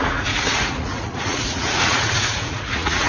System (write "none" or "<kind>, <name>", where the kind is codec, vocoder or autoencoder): vocoder, Vocos